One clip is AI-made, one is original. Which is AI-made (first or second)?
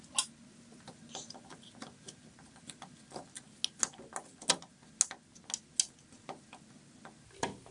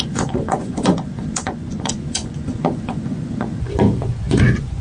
second